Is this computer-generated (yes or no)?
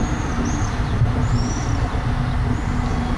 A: no